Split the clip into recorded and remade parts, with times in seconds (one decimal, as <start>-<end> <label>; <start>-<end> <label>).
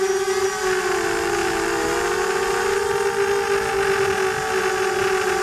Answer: 0.0-5.4 recorded